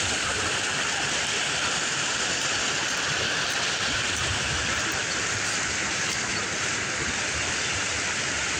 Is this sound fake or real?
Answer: fake